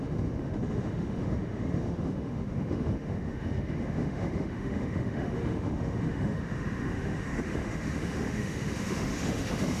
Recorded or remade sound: remade